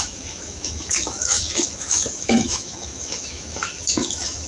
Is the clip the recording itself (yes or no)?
no